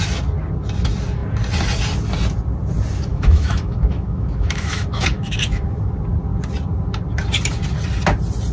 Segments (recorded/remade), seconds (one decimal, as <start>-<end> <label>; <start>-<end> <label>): 0.0-3.1 recorded; 3.1-5.9 remade; 5.9-8.5 recorded